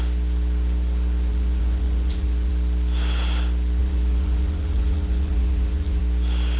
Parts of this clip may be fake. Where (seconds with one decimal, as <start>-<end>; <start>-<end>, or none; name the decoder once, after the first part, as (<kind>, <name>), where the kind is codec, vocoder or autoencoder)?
1.3-2.5 (vocoder, Vocos); 3.8-6.0